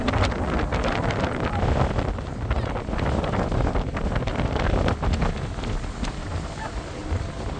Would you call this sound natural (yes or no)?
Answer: yes